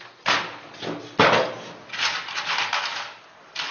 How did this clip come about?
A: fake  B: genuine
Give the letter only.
B